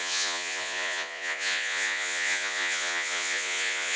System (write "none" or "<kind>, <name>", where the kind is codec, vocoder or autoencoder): vocoder, Vocos